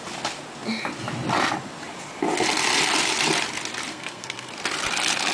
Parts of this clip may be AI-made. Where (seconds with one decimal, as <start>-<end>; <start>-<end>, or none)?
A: 3.9-4.5